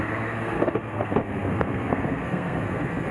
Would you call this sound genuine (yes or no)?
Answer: no